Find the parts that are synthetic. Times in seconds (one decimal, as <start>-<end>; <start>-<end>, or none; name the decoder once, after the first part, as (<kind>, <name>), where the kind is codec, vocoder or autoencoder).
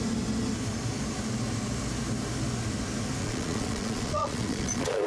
3.2-5.1 (vocoder, Vocos)